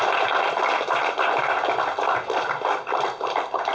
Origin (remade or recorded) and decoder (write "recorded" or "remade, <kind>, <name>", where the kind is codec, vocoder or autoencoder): recorded